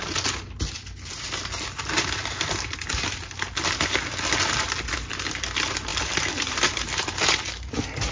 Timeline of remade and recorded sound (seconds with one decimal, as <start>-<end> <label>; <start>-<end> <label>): 0.0-8.1 recorded